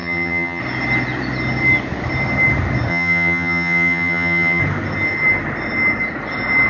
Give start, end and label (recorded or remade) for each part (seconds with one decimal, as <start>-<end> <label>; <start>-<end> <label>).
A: 0.0-0.6 remade; 0.6-2.9 recorded; 2.9-4.6 remade; 4.6-6.7 recorded